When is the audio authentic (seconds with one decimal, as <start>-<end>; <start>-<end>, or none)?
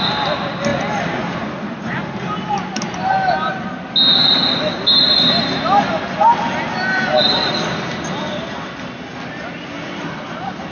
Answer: 0.0-10.7